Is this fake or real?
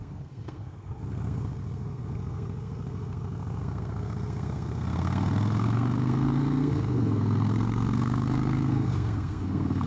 fake